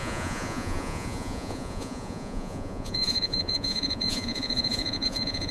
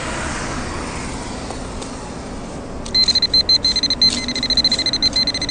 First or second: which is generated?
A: first